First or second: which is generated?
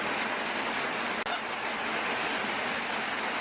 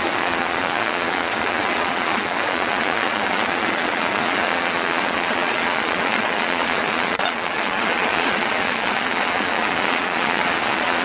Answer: second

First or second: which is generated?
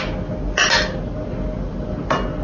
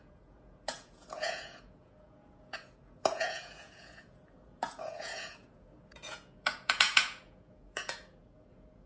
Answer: second